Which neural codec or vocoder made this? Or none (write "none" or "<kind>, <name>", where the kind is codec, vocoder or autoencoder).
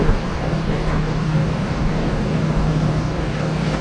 codec, DAC